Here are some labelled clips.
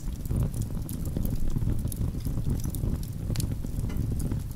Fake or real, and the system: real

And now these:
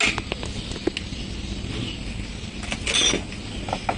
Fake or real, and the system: real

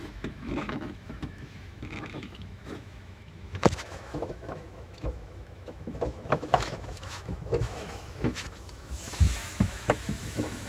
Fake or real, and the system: fake, autoencoder, DAC-VAE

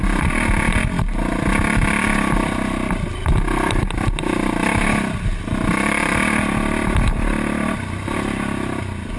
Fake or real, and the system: real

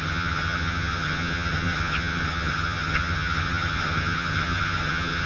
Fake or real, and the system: fake, vocoder, HiFi-GAN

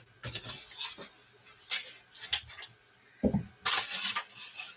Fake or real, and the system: real